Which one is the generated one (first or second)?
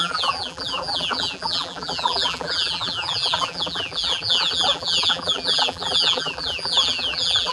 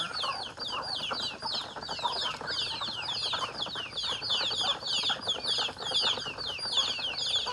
first